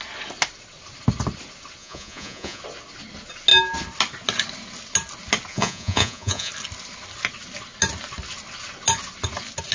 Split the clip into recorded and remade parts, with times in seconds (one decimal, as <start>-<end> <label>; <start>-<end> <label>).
0.0-1.8 recorded; 1.8-2.6 remade; 2.6-5.5 recorded; 5.5-6.5 remade; 6.5-9.7 recorded